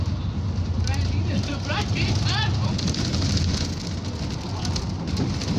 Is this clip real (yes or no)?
yes